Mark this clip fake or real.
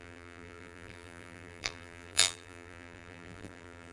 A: fake